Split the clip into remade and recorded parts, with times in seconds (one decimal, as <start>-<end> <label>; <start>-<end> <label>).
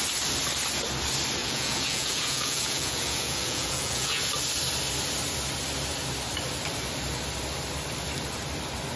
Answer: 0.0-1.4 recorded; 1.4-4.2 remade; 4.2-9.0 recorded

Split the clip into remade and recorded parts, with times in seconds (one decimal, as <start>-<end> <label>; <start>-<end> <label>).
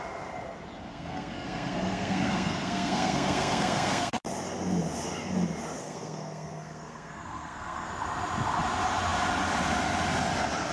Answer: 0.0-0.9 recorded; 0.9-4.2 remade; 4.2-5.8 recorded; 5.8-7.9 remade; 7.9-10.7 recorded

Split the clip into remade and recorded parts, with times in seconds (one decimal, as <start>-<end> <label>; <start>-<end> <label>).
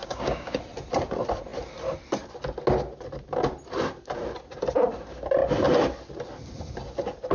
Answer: 0.0-0.6 remade; 0.6-7.3 recorded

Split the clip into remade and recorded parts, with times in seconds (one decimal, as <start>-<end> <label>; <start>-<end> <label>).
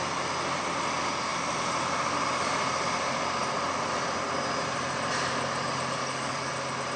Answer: 0.0-6.0 recorded; 6.0-6.5 remade; 6.5-7.0 recorded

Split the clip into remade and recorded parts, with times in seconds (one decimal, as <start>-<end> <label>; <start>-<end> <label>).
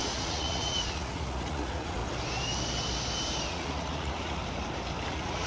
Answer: 0.0-2.0 remade; 2.0-3.5 recorded; 3.5-4.4 remade; 4.4-5.1 recorded; 5.1-5.5 remade